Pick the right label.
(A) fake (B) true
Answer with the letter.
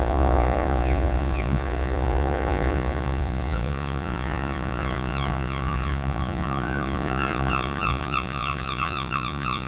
A